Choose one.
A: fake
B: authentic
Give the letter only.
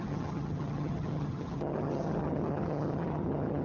A